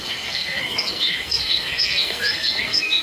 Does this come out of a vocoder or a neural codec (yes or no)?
yes